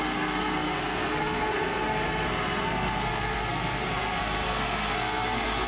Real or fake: fake